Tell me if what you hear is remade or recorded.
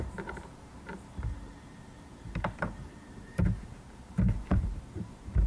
remade